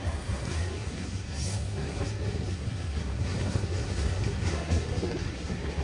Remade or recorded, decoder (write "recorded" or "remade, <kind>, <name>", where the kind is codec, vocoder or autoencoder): remade, codec, SNAC